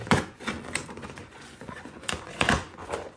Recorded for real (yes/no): no